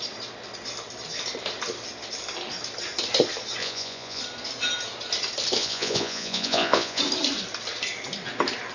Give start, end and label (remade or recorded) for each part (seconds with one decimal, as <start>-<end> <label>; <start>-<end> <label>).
0.0-3.6 recorded; 3.6-4.2 remade; 4.2-5.6 recorded; 5.6-7.0 remade; 7.0-8.7 recorded